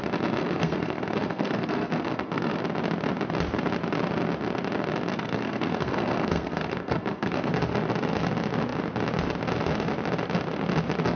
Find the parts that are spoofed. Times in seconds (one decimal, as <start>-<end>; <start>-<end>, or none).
0.4-2.6; 5.1-7.5